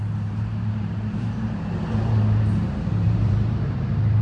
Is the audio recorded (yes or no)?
no